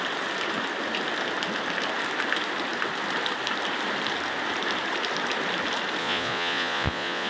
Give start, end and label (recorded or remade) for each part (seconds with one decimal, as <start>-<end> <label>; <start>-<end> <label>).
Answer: 0.0-6.0 recorded; 6.0-7.3 remade